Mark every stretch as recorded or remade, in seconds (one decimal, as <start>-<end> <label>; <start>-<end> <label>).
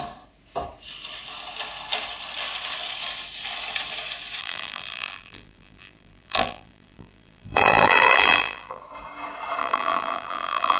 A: 0.0-4.4 recorded; 4.4-8.8 remade; 8.8-9.6 recorded; 9.6-10.8 remade